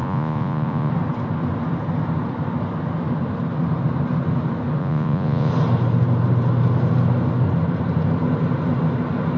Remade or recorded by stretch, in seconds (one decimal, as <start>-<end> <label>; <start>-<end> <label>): 0.0-0.9 remade; 0.9-4.8 recorded; 4.8-5.5 remade; 5.5-9.4 recorded